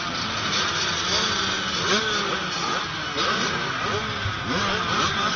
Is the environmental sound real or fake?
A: real